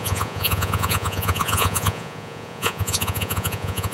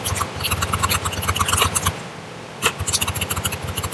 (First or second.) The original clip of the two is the second